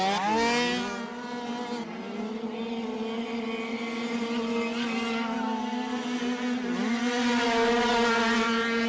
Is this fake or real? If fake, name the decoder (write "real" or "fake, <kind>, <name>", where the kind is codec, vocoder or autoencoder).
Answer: real